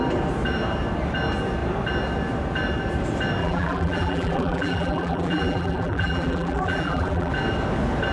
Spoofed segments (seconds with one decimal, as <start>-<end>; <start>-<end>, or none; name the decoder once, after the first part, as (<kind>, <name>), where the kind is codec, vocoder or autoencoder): 3.4-7.3 (vocoder, BigVGAN v2)